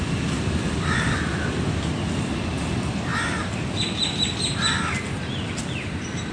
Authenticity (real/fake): real